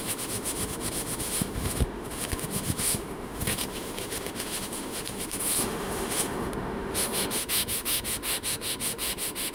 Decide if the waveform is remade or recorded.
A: remade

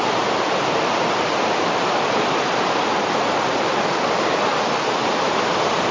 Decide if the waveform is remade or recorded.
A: recorded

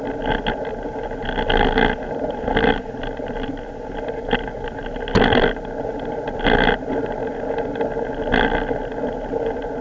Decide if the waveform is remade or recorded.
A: recorded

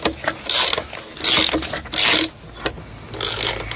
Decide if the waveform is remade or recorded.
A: recorded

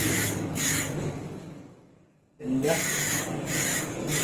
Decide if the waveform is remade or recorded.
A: remade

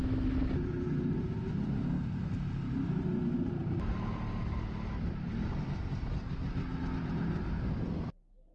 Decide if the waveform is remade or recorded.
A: recorded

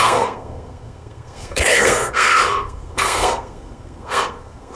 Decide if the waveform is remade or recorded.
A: remade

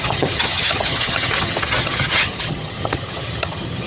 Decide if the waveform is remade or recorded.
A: remade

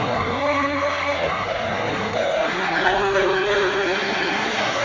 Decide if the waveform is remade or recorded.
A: remade